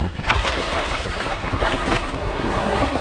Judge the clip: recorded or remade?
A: remade